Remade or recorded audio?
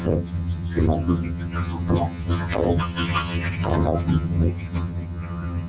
remade